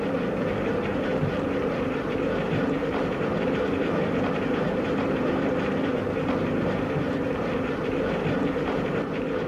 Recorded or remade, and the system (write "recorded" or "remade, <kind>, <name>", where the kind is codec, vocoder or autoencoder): remade, vocoder, BigVGAN v2